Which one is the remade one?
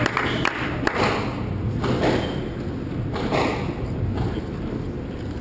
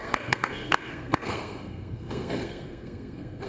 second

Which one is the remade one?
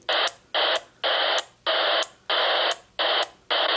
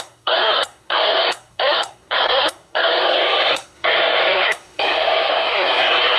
second